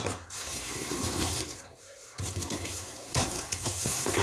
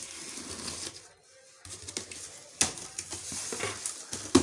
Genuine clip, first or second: second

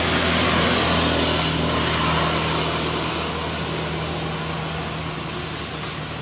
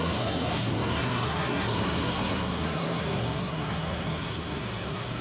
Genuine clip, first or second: first